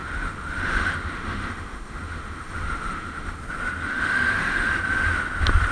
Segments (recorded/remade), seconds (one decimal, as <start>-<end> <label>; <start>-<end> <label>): 0.0-3.4 remade; 3.4-3.8 recorded; 3.8-4.7 remade; 4.7-5.7 recorded

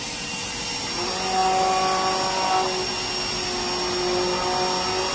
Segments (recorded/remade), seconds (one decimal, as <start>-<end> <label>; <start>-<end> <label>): 0.0-5.1 recorded

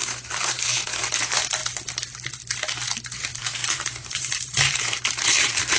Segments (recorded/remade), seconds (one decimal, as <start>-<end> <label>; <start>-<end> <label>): 0.0-1.6 remade; 1.6-3.0 recorded; 3.0-5.8 remade

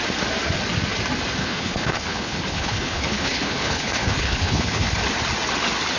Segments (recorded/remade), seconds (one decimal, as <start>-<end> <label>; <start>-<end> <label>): 0.0-1.4 recorded; 1.4-5.0 remade; 5.0-6.0 recorded

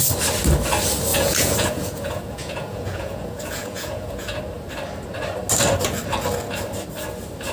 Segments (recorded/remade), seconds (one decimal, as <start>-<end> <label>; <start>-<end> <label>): 0.0-1.1 recorded; 1.1-4.4 remade; 4.4-7.5 recorded

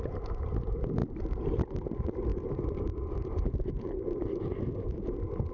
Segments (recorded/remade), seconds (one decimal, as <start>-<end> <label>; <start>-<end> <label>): 0.0-5.5 recorded